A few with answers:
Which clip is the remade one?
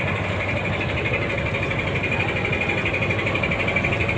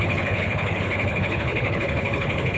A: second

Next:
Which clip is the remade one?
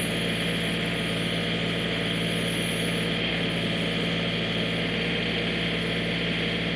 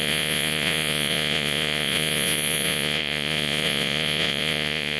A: second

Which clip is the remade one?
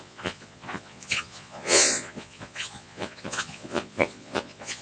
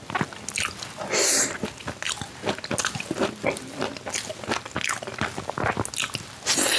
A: first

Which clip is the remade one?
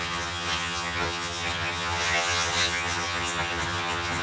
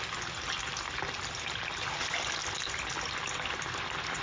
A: first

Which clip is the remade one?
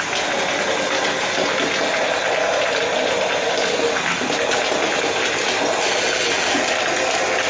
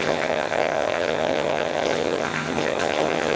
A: second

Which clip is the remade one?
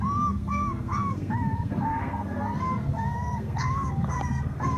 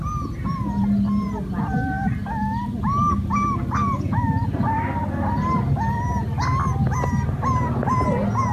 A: first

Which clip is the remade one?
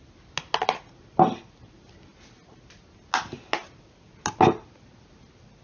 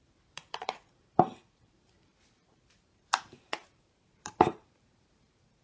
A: second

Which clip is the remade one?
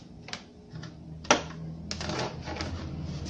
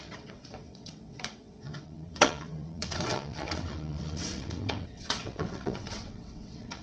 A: second